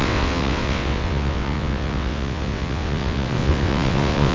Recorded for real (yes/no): no